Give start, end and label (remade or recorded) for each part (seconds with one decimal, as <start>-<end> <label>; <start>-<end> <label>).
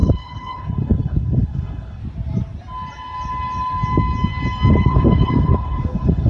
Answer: 0.0-2.0 remade; 2.0-4.7 recorded; 4.7-6.3 remade